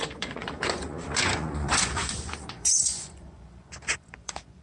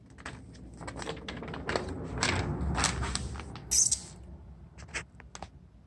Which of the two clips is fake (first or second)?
first